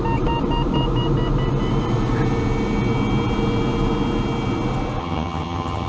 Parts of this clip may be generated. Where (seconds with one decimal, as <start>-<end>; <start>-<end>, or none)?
5.0-5.9

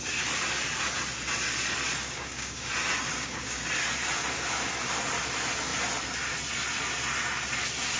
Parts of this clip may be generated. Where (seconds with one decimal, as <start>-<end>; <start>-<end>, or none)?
2.0-2.7; 3.1-3.6

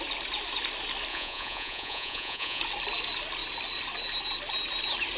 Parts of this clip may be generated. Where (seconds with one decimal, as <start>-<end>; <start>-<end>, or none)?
1.1-2.6